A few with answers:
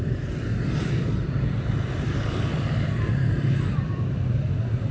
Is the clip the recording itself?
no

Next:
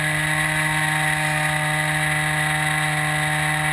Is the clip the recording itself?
yes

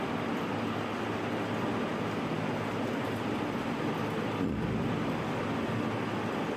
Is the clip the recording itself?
yes